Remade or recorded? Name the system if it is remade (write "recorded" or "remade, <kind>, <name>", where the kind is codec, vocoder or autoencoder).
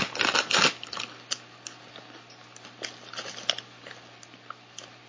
recorded